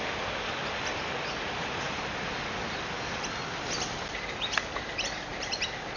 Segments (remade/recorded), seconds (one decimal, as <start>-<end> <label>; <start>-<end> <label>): 0.0-6.0 recorded